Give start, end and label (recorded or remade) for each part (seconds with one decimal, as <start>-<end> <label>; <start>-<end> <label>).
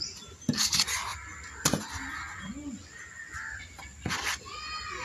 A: 0.0-5.0 recorded